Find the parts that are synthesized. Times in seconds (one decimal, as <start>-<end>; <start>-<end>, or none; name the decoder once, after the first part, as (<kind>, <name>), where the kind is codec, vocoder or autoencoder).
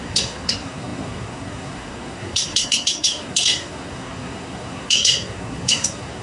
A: 0.0-6.2 (codec, SNAC)